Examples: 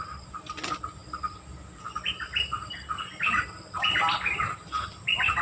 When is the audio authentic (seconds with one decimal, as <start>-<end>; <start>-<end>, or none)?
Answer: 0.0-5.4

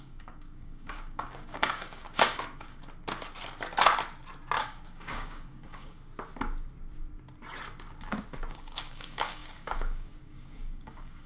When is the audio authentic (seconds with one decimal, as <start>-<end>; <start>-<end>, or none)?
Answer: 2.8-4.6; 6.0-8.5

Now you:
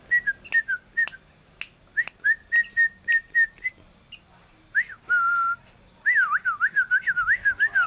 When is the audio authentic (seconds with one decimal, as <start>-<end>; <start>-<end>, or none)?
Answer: 0.0-7.9

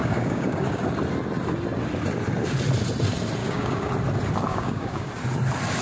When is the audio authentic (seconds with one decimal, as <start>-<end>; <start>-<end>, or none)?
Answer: 0.8-3.4; 3.9-4.5; 5.1-5.8

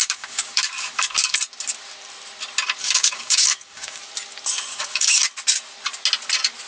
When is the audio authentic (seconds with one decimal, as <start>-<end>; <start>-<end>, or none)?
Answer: 1.4-2.8; 4.0-4.7; 5.2-6.7

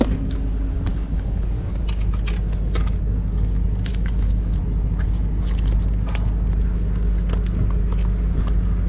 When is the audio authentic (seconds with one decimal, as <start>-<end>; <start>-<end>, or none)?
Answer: 0.0-0.9; 1.8-3.9; 4.6-8.9